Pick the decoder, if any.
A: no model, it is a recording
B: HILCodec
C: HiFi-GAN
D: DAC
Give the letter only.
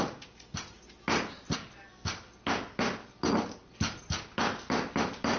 A